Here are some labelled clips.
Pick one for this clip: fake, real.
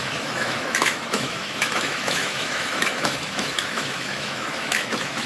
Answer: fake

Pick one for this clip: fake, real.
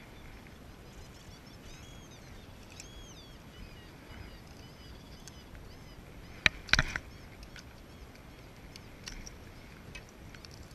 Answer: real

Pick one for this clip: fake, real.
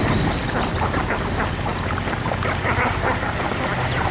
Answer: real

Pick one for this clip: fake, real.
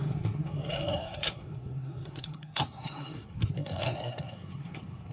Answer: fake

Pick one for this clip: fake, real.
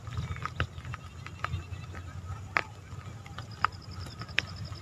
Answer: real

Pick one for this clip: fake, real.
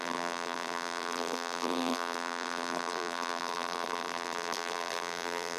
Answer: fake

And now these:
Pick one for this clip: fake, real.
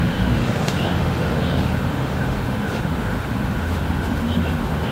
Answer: fake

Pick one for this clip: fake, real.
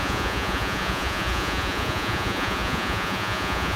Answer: fake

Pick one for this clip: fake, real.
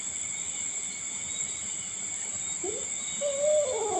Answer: real